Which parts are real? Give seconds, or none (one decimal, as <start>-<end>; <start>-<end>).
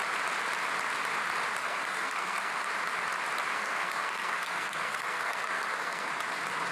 0.0-1.6; 2.7-3.5; 6.1-6.7